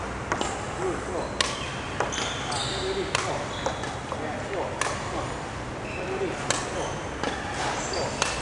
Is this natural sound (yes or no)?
yes